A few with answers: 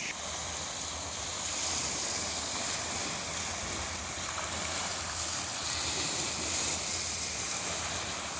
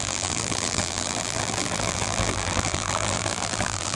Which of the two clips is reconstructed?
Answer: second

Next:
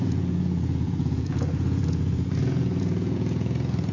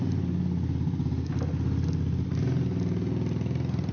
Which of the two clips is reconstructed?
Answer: first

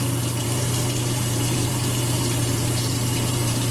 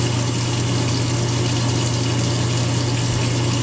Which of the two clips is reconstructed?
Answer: first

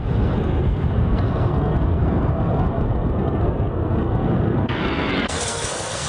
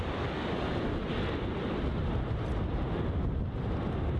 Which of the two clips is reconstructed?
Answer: first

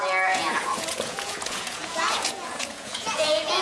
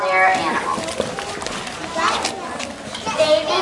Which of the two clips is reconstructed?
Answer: first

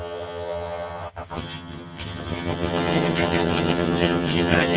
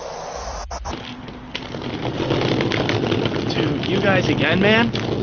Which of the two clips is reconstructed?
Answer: first